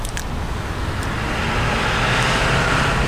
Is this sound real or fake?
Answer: real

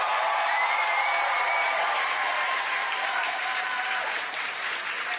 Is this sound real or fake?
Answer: fake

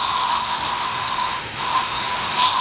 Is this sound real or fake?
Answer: fake